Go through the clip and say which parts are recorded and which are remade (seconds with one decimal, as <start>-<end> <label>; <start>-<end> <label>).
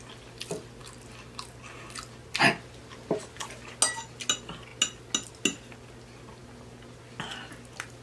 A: 0.0-8.0 recorded